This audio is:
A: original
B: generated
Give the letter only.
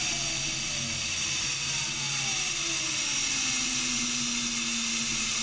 A